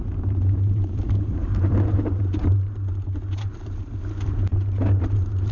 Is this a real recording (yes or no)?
no